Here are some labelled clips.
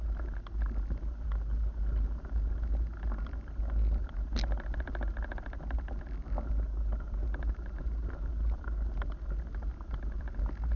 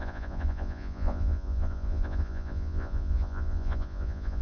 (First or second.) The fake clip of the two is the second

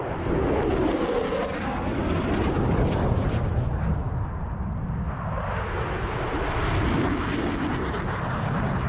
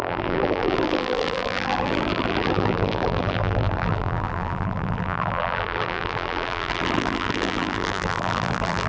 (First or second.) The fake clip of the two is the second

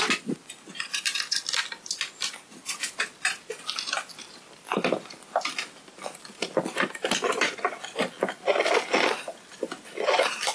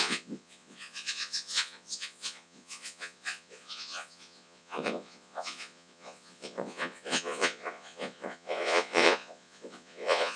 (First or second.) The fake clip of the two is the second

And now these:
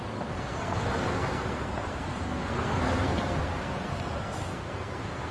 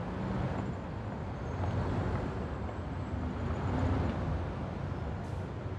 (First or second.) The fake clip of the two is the first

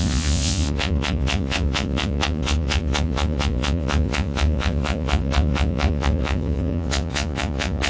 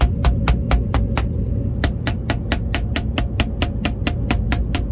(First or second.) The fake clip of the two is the first